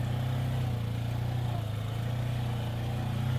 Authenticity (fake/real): real